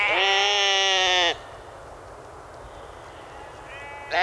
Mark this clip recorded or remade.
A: recorded